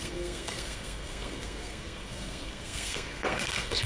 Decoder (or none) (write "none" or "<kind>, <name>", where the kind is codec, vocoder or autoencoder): codec, SNAC